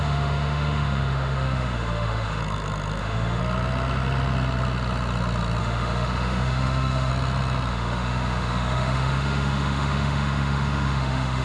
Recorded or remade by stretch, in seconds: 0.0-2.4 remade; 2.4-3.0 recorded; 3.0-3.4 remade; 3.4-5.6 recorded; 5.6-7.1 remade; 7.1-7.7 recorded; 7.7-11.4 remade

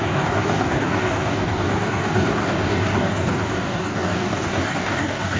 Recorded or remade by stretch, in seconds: 0.0-5.4 remade

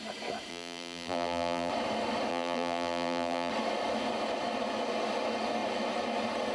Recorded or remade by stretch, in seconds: 0.0-0.5 recorded; 0.5-1.7 remade; 1.7-2.3 recorded; 2.3-3.5 remade; 3.5-6.5 recorded

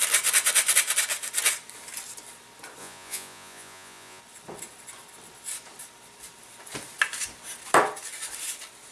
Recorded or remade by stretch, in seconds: 0.0-2.8 recorded; 2.8-4.2 remade; 4.2-8.9 recorded

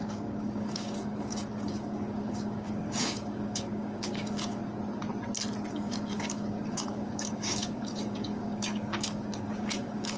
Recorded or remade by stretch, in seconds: 0.0-4.6 remade; 4.6-5.7 recorded; 5.7-10.2 remade

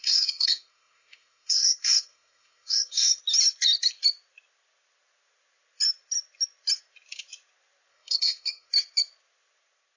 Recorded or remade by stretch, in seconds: 0.0-3.2 remade; 3.2-7.9 recorded; 7.9-8.7 remade; 8.7-10.0 recorded

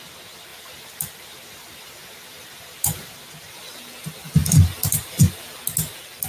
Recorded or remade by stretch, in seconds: 0.0-0.5 recorded; 0.5-3.3 remade; 3.3-6.3 recorded

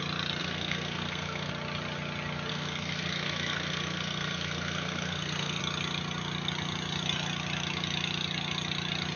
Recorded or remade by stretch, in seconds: 0.0-0.4 recorded; 0.4-1.5 remade; 1.5-2.5 recorded; 2.5-5.6 remade; 5.6-9.2 recorded